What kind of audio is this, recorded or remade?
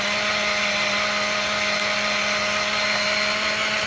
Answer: recorded